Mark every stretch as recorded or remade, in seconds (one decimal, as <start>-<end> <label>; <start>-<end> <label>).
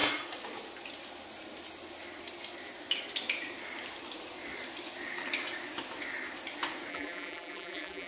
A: 0.0-6.9 recorded; 6.9-8.1 remade